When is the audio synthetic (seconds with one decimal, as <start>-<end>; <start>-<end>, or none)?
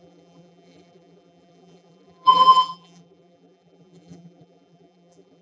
0.0-5.4